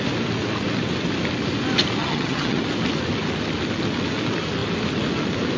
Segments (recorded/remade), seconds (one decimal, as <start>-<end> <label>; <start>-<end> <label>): 0.0-2.0 recorded; 2.0-2.6 remade; 2.6-5.6 recorded